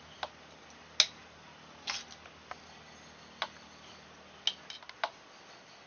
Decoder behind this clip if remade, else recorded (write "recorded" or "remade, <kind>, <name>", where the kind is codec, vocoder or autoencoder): recorded